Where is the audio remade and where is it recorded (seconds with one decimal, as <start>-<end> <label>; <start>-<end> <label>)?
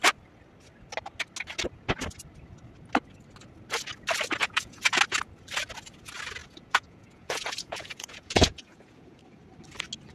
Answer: 0.0-4.4 recorded; 4.4-5.0 remade; 5.0-6.4 recorded; 6.4-9.2 remade; 9.2-10.1 recorded